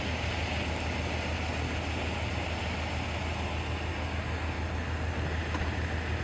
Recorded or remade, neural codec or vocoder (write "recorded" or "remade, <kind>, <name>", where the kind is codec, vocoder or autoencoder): recorded